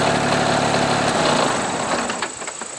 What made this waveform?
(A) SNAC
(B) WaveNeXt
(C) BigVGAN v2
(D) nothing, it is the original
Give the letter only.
D